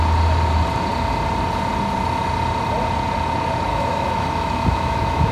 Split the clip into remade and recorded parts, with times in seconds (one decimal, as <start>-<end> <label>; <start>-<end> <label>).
0.0-3.7 recorded; 3.7-5.3 remade